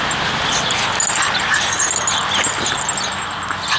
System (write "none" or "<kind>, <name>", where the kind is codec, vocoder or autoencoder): none